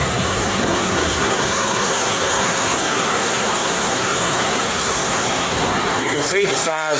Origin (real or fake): fake